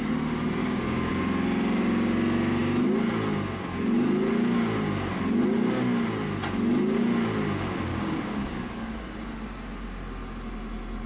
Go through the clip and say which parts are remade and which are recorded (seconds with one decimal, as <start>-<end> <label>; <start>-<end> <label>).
0.0-0.6 recorded; 0.6-1.1 remade; 1.1-7.9 recorded; 7.9-8.7 remade; 8.7-11.1 recorded